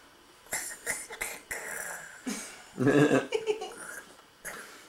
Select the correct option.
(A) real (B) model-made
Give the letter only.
B